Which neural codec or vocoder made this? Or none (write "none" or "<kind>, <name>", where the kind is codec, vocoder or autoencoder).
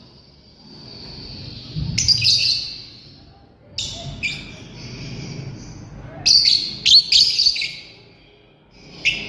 none